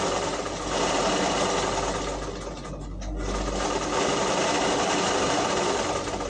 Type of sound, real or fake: real